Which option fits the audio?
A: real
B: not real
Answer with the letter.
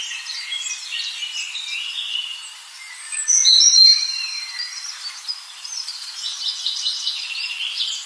B